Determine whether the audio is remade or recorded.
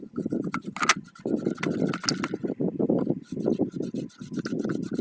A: recorded